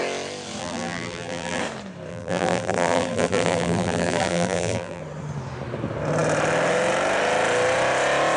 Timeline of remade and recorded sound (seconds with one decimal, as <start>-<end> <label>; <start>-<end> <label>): 0.0-0.6 recorded; 0.6-1.6 remade; 1.6-2.1 recorded; 2.1-5.0 remade; 5.0-8.4 recorded